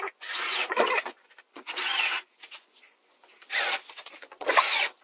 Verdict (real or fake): fake